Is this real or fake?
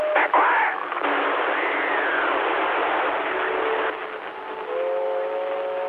real